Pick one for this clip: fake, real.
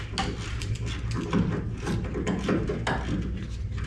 real